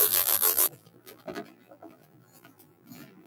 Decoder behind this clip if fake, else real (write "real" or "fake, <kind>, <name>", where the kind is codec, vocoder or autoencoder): fake, vocoder, BigVGAN v2